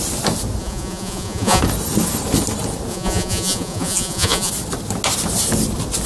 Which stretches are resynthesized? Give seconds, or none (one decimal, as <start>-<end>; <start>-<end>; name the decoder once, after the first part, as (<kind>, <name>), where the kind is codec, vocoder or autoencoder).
0.6-1.6 (vocoder, Vocos); 2.9-4.5